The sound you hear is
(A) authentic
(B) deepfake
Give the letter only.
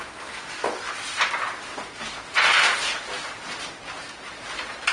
A